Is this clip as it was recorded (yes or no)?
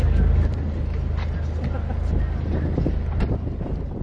yes